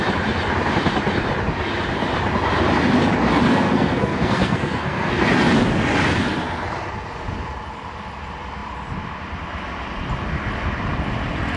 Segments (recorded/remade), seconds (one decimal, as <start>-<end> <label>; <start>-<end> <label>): 0.0-3.5 recorded; 3.5-5.1 remade; 5.1-11.6 recorded